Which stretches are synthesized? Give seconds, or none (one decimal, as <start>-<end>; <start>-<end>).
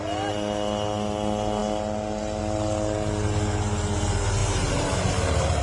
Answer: 4.4-5.6